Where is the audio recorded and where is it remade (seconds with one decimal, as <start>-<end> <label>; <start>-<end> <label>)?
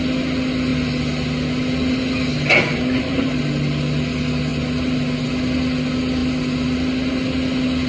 0.0-7.9 recorded